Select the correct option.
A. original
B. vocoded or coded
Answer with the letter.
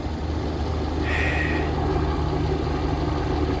A